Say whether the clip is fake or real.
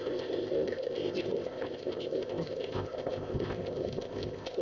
fake